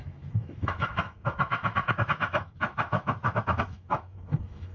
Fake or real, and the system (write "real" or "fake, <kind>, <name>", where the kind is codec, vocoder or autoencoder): fake, autoencoder, DAC-VAE